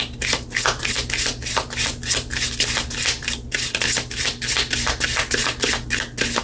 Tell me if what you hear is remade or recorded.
recorded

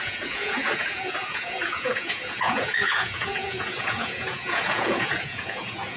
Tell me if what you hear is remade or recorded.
remade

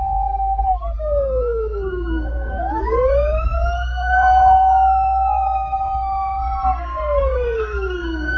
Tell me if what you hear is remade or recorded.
remade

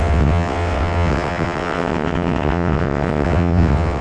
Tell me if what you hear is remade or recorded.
remade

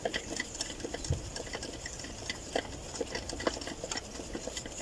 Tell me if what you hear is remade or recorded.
recorded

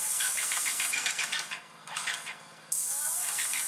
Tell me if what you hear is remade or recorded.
remade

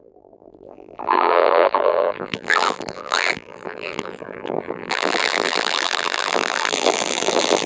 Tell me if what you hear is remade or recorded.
remade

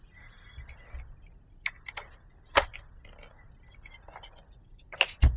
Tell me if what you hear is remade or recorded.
recorded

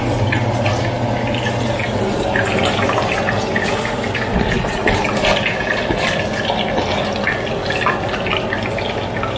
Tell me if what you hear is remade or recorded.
recorded